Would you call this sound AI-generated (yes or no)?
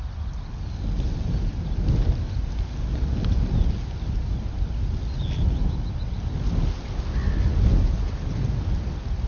no